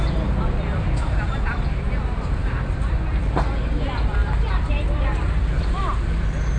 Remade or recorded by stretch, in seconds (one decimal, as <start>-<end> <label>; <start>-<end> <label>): 0.0-6.6 recorded